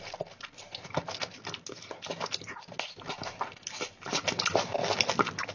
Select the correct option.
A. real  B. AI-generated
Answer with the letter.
A